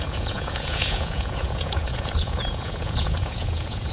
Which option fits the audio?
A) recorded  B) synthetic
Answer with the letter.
B